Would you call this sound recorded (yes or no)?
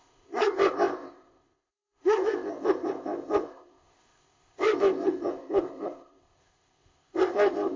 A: no